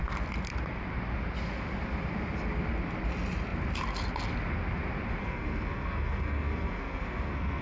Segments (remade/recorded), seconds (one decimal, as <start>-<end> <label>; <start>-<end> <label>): 0.0-5.2 recorded; 5.2-7.6 remade